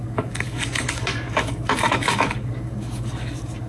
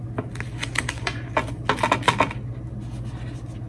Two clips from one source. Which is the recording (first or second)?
second